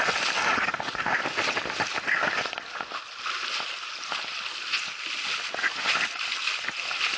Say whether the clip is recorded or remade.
recorded